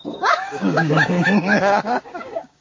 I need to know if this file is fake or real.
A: fake